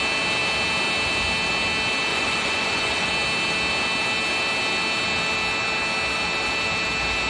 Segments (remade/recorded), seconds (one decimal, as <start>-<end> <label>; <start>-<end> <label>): 0.0-2.1 recorded; 2.1-3.1 remade; 3.1-7.3 recorded